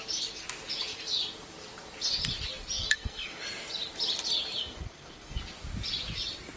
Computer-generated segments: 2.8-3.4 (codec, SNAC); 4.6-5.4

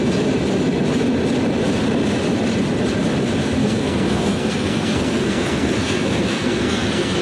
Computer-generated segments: 3.6-7.2 (codec, SNAC)

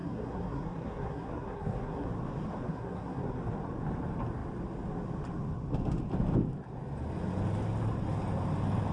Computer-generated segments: 0.0-2.1 (codec, SNAC); 2.7-3.4